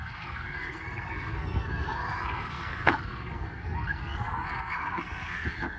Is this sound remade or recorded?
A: remade